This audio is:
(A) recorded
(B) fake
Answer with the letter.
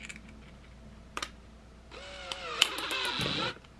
A